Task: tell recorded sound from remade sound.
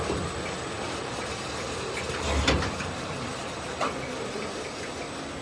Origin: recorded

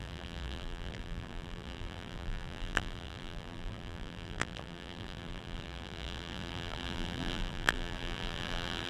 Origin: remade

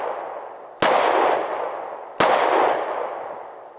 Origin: recorded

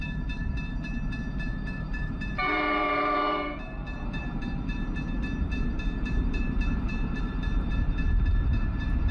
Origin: remade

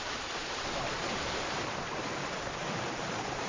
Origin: remade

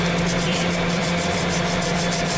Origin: remade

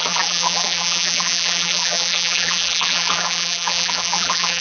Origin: remade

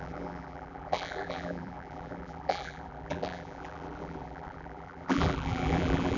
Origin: remade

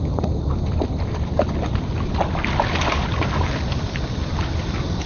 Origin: recorded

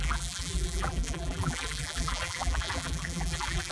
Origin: remade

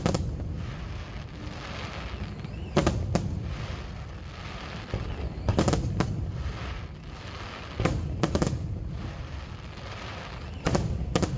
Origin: recorded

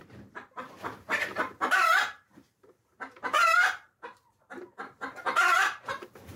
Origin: remade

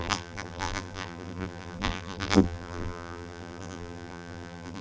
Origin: remade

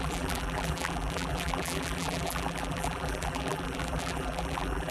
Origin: remade